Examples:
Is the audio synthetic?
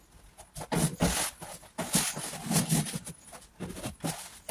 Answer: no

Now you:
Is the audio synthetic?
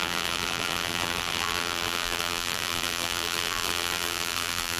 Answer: yes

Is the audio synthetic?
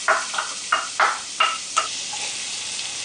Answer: no